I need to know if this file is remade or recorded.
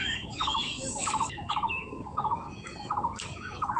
remade